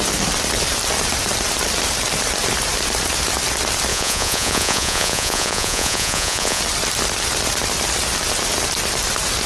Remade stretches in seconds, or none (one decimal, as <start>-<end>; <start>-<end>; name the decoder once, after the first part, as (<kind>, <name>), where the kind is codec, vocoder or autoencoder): 3.9-6.6 (vocoder, Vocos)